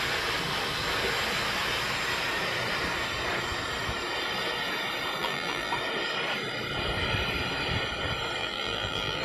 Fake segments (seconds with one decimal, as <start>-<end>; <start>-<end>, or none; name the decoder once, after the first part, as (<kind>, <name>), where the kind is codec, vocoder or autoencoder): 5.2-5.7 (vocoder, BigVGAN v2); 8.4-9.2